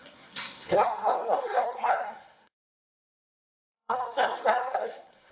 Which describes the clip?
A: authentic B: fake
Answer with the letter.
B